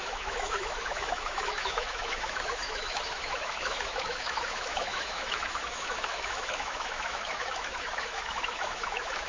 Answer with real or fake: fake